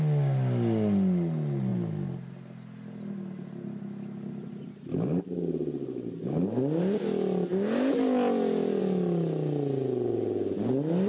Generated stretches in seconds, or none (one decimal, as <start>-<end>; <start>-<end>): none